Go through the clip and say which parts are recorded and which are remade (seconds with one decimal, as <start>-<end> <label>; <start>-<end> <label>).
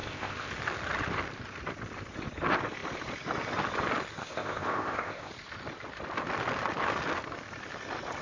0.0-0.5 remade; 0.5-4.2 recorded; 4.2-5.3 remade; 5.3-8.2 recorded